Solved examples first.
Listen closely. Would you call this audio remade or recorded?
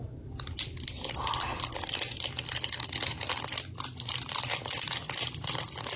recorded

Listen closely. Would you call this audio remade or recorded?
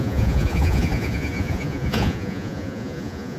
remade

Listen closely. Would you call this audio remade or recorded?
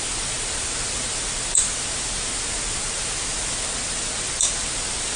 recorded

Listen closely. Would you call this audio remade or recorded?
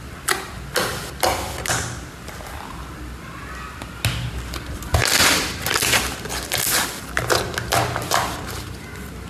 recorded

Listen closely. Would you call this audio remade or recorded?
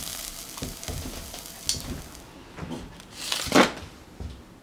recorded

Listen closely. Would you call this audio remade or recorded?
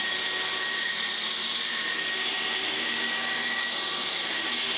remade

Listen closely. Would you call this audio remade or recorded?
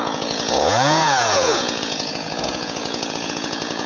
remade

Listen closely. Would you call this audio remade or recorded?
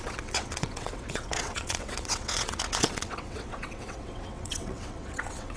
remade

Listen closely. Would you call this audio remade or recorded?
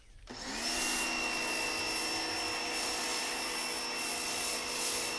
recorded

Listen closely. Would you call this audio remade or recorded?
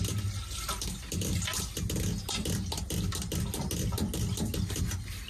recorded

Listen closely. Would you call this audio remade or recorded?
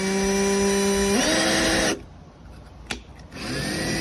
recorded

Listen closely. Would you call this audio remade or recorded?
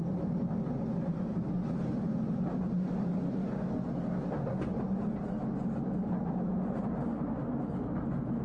recorded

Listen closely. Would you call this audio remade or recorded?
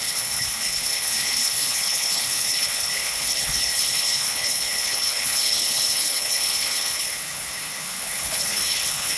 remade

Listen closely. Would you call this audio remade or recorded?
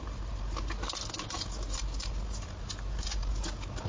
recorded